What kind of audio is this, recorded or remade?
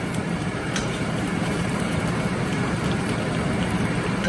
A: remade